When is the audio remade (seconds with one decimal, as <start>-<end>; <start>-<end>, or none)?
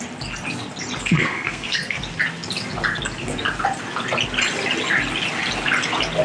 1.0-2.0